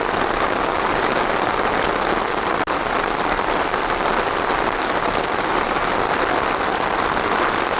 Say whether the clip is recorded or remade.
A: recorded